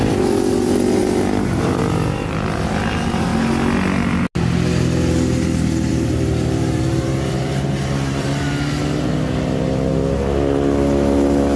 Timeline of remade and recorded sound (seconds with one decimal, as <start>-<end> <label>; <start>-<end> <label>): 0.0-1.0 recorded; 1.0-1.8 remade; 1.8-5.9 recorded; 5.9-8.4 remade; 8.4-11.6 recorded

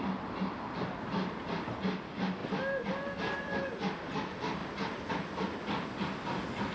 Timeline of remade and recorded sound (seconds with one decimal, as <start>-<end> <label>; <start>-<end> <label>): 0.0-6.7 recorded

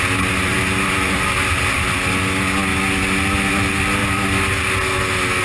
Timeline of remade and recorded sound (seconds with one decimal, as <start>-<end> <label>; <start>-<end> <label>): 0.0-0.4 recorded; 0.4-2.1 remade; 2.1-5.4 recorded

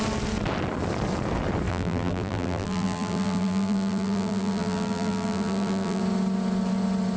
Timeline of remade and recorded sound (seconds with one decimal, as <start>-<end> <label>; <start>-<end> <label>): 0.0-1.7 recorded; 1.7-6.0 remade; 6.0-7.2 recorded